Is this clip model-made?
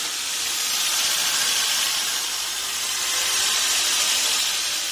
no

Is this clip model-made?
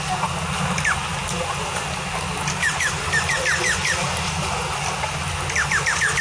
no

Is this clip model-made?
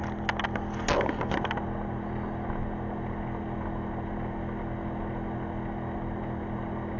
no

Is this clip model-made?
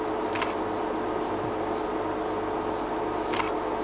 no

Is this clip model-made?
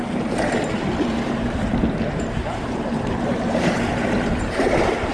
yes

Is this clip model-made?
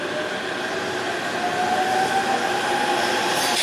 no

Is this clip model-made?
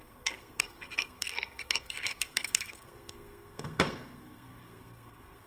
yes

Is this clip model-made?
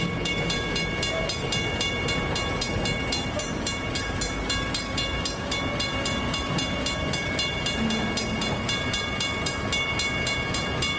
no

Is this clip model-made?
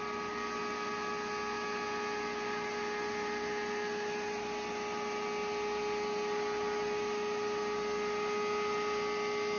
no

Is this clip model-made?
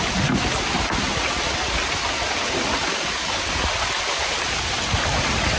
no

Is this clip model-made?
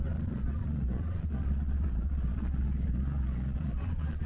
yes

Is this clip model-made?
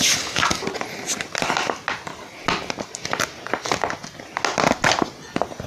no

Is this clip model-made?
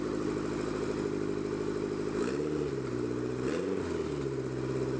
no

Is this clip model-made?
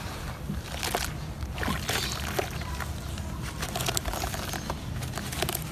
no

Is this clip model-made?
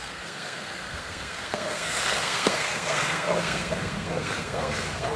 yes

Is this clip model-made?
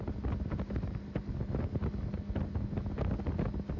no